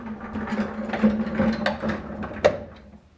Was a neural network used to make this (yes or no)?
no